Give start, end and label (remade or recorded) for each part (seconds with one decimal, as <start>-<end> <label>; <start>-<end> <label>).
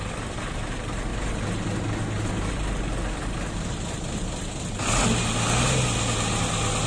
0.0-6.9 recorded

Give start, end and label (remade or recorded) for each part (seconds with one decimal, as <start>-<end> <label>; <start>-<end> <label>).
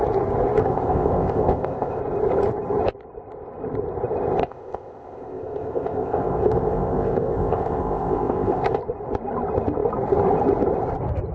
0.0-0.6 recorded; 0.6-2.0 remade; 2.0-4.4 recorded; 4.4-8.8 remade; 8.8-11.3 recorded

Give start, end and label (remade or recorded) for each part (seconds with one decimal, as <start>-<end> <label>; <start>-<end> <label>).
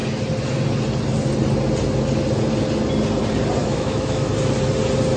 0.0-3.6 recorded; 3.6-4.3 remade; 4.3-5.2 recorded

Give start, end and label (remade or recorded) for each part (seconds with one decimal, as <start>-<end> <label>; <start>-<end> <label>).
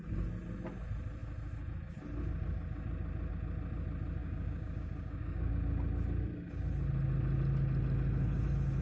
0.0-4.2 recorded; 4.2-5.5 remade; 5.5-8.8 recorded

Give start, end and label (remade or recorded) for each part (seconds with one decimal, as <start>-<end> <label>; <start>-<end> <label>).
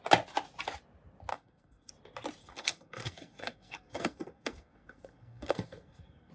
0.0-1.3 recorded; 1.3-1.9 remade; 1.9-2.4 recorded; 2.4-6.3 remade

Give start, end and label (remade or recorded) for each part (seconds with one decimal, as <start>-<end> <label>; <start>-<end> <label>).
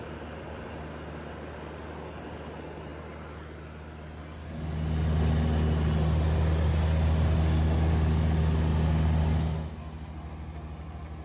0.0-11.2 recorded